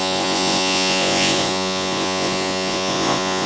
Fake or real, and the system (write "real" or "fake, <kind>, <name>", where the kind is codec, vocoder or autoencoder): fake, vocoder, Vocos